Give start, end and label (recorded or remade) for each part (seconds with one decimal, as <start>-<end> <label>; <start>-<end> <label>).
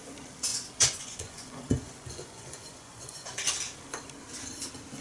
0.0-0.5 recorded; 0.5-3.5 remade; 3.5-5.0 recorded